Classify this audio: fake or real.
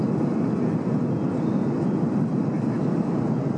real